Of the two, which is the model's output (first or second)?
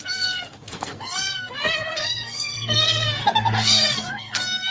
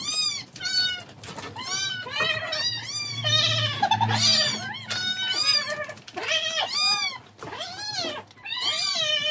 first